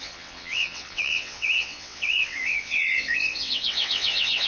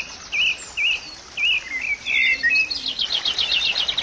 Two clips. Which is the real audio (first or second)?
second